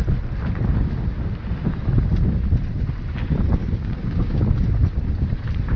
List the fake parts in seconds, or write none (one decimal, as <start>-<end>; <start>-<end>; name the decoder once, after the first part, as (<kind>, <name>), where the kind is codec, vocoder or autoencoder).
3.6-4.4 (codec, DAC)